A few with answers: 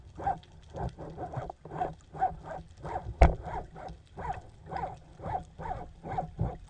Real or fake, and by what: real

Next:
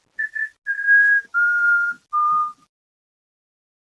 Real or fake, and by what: real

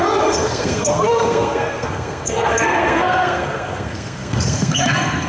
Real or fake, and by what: fake, codec, SNAC